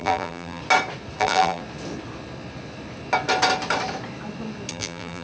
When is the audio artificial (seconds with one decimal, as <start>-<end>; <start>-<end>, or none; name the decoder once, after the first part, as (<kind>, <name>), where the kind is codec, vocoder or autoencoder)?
0.0-0.6 (vocoder, BigVGAN v2); 1.2-1.6; 4.7-5.2